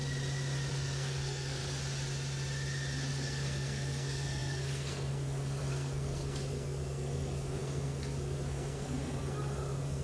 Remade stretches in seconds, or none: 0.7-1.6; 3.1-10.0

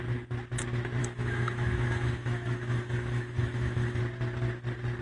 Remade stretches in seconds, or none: 1.0-4.0

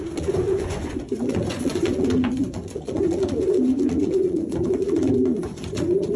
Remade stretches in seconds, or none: 0.0-6.2

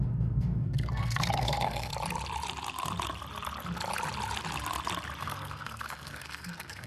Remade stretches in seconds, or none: 0.0-1.9; 5.2-6.9

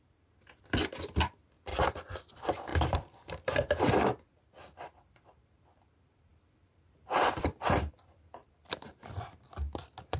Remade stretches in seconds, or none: 1.7-2.3; 2.7-3.9; 6.3-9.5

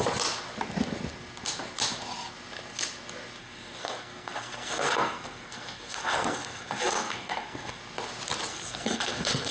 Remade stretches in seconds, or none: 3.4-7.8; 8.5-9.5